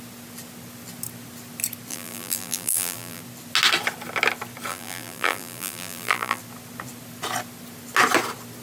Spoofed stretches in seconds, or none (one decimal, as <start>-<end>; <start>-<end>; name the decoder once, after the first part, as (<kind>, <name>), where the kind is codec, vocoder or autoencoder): 1.9-3.2 (vocoder, BigVGAN v2); 4.7-6.4